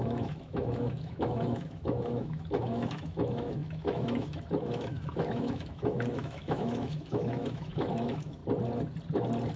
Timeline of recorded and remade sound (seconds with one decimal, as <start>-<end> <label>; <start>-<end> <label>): 0.0-8.4 remade; 8.4-9.6 recorded